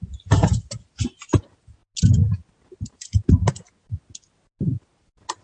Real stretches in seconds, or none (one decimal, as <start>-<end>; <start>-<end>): 0.0-5.4